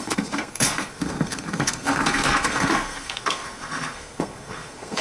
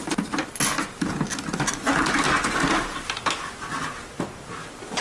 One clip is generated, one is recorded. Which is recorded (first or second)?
second